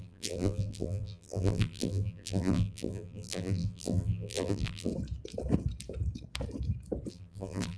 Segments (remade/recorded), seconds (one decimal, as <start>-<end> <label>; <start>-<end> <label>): 0.0-4.9 remade; 4.9-7.1 recorded; 7.1-7.8 remade